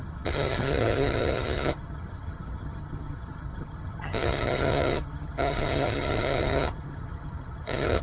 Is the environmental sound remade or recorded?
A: remade